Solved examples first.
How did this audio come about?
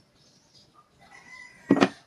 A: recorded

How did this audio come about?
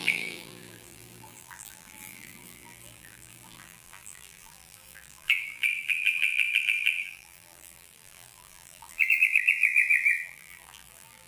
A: remade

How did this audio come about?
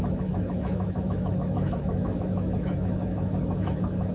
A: remade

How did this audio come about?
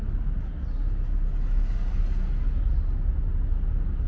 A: recorded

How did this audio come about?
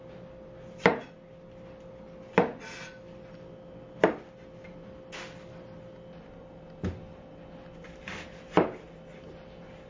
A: recorded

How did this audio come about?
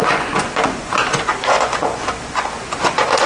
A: remade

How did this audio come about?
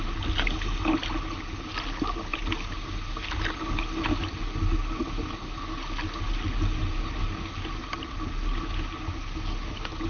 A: recorded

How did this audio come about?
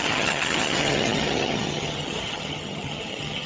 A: remade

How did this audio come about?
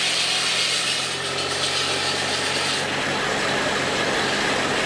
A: recorded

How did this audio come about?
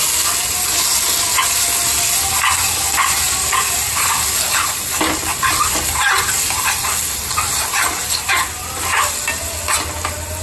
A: recorded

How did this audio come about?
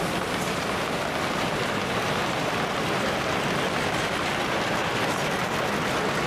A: recorded